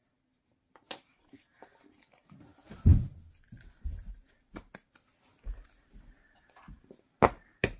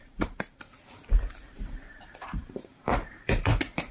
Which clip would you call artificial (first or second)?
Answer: second